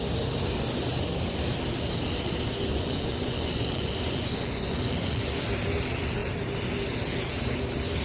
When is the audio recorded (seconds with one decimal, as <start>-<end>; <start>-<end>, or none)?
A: 0.0-2.7; 5.2-8.0